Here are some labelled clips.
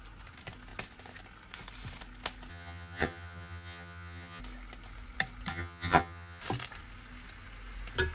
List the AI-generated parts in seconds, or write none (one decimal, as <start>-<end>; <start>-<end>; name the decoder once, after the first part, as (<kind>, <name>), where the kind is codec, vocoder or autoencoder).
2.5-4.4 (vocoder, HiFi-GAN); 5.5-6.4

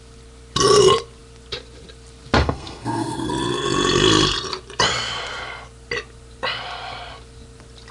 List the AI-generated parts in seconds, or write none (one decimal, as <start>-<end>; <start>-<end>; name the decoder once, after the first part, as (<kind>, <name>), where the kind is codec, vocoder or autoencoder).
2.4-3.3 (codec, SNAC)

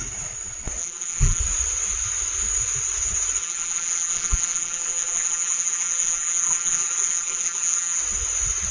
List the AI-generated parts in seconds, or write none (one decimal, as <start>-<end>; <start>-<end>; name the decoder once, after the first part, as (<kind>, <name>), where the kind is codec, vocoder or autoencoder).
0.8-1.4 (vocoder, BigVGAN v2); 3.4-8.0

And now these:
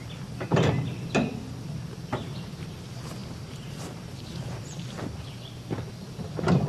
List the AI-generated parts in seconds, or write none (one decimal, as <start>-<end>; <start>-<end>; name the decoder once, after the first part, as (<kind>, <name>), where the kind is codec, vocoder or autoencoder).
3.2-4.6 (vocoder, BigVGAN v2)

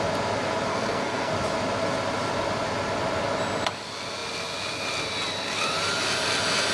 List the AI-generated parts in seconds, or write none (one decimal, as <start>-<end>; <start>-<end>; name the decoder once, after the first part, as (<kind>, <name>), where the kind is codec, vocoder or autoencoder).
0.7-1.3 (codec, SNAC)

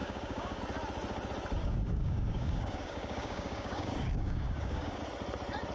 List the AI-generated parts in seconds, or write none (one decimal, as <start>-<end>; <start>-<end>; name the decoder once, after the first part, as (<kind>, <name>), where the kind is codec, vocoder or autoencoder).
0.0-0.6 (codec, DAC); 1.6-5.0

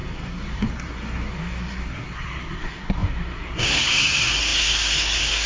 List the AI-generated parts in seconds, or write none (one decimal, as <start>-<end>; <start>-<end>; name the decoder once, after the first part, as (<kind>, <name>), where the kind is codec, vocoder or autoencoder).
0.0-5.5 (codec, SNAC)

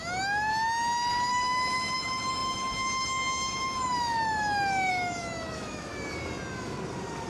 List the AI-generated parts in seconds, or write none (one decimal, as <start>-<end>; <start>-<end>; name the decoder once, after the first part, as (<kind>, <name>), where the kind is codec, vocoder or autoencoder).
0.0-0.5 (autoencoder, DAC-VAE); 1.3-5.9